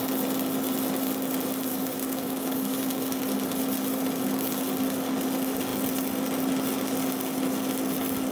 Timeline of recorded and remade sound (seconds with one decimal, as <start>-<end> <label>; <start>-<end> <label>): 0.0-1.7 recorded; 1.7-3.2 remade; 3.2-8.3 recorded